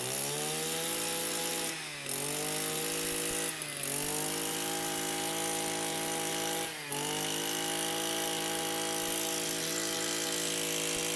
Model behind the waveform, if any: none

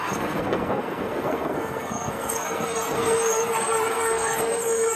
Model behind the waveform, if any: codec, SNAC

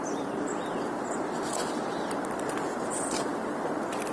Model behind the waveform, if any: none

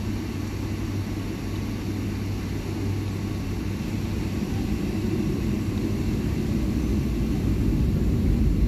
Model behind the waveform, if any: none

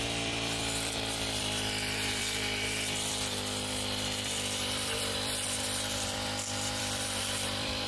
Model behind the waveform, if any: vocoder, BigVGAN v2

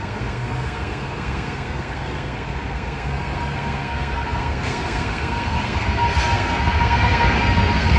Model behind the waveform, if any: codec, SNAC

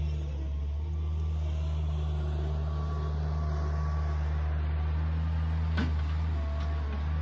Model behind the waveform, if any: none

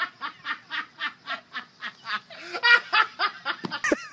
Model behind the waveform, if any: none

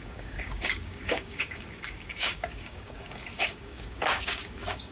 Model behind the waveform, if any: codec, DAC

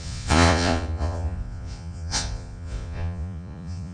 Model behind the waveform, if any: vocoder, Vocos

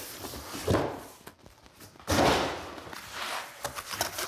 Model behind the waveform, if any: none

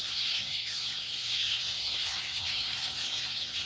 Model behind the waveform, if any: codec, SNAC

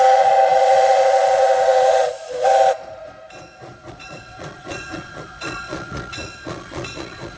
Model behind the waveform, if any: vocoder, Vocos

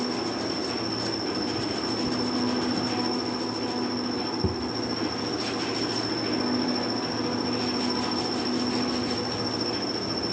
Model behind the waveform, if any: none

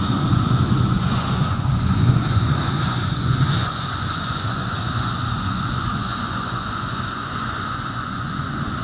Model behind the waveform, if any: vocoder, Vocos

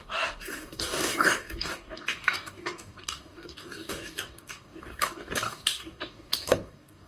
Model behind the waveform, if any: codec, DAC